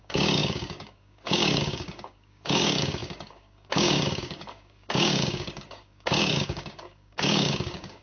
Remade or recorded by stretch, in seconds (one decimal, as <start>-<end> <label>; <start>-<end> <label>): 0.0-8.0 remade